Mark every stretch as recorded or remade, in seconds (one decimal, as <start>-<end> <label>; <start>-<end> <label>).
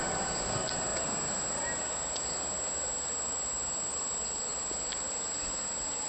0.0-6.1 recorded